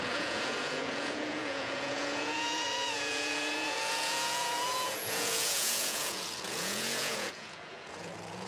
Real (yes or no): no